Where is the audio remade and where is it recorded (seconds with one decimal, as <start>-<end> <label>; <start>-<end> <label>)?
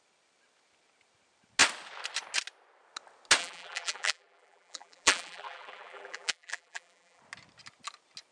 0.0-3.4 recorded; 3.4-7.2 remade; 7.2-8.3 recorded